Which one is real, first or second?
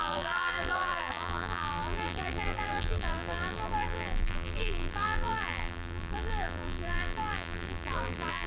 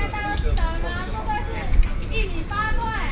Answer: second